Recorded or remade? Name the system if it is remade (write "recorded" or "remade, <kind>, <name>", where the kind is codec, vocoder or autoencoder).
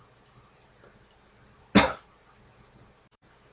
recorded